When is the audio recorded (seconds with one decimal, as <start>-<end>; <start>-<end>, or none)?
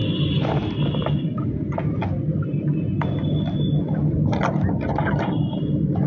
0.0-6.1